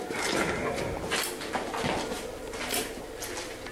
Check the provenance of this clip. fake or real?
real